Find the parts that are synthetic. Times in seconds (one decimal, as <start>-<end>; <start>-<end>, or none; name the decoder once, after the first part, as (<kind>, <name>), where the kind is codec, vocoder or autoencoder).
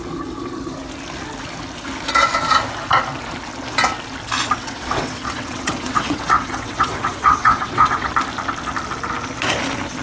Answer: 4.6-8.1 (vocoder, WaveNeXt)